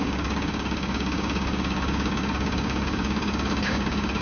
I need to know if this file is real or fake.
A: fake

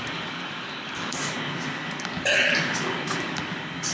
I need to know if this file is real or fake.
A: fake